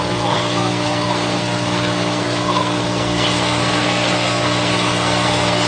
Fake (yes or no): yes